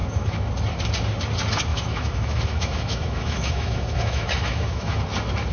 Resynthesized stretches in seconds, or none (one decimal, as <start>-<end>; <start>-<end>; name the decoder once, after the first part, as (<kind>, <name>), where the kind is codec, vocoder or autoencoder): 0.0-0.5 (autoencoder, DAC-VAE); 1.7-5.0